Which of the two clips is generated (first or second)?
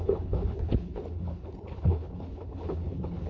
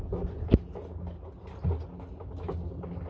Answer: first